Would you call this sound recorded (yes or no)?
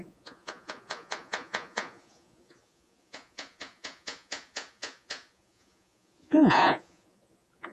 no